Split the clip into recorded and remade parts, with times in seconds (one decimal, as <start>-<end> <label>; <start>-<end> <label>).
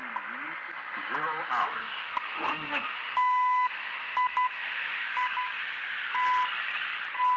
0.0-1.6 recorded; 1.6-6.0 remade; 6.0-7.4 recorded